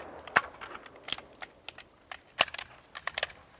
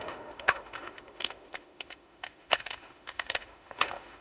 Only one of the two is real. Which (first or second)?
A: first